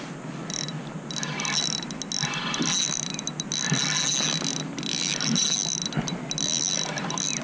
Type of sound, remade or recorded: recorded